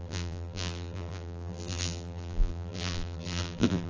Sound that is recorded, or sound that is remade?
remade